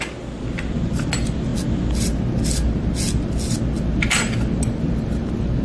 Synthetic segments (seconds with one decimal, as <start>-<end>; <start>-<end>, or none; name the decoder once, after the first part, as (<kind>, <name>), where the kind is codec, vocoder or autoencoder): none